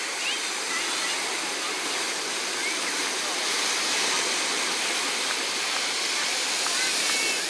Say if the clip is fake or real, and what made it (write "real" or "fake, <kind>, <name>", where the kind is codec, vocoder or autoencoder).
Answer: fake, vocoder, BigVGAN v2